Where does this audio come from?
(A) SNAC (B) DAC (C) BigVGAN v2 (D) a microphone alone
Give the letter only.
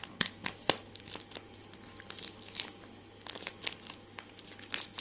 D